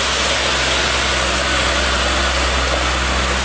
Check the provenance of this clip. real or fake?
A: real